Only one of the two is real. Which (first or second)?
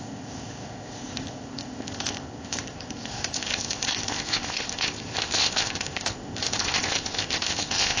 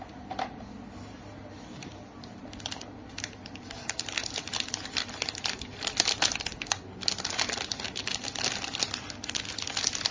second